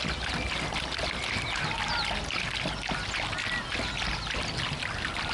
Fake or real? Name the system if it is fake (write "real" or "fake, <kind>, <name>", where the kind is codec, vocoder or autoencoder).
real